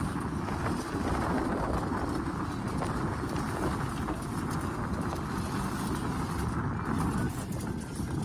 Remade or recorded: recorded